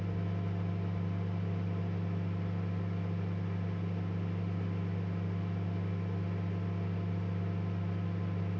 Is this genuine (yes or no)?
yes